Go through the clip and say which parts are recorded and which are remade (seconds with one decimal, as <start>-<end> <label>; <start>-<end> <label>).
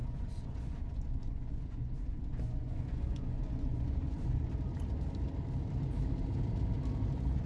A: 0.0-4.5 remade; 4.5-7.5 recorded